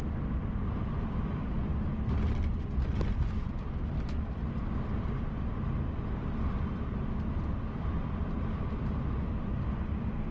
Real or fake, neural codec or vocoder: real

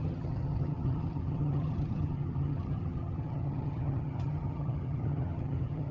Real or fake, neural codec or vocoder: fake, vocoder, HiFi-GAN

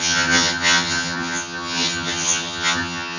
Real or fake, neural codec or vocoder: fake, vocoder, HiFi-GAN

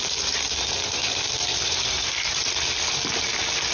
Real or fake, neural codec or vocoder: real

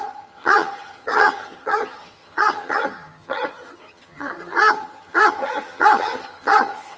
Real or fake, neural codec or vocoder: fake, vocoder, HiFi-GAN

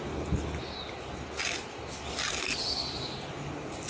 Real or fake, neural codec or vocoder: real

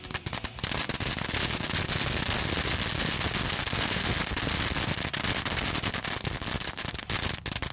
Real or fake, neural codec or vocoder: real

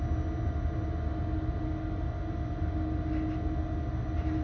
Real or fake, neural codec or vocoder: real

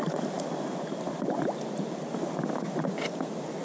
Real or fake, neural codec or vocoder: real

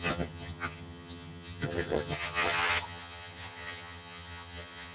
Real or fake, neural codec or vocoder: fake, vocoder, HiFi-GAN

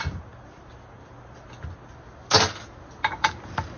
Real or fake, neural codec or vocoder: real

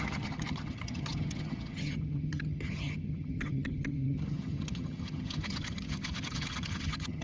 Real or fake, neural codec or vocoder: fake, vocoder, HiFi-GAN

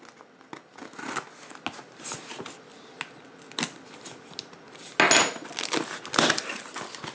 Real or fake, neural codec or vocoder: real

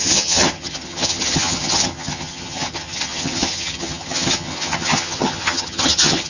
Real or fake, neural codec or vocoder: fake, vocoder, HiFi-GAN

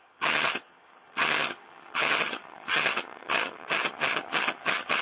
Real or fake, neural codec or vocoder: fake, vocoder, HiFi-GAN